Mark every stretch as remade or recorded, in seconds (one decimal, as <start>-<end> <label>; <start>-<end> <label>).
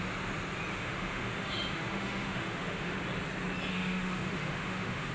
0.0-0.7 recorded; 0.7-3.0 remade; 3.0-3.7 recorded; 3.7-5.1 remade